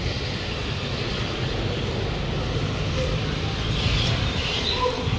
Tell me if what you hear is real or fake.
real